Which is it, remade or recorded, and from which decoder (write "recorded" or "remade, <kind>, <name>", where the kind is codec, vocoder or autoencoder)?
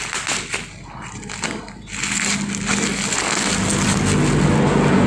recorded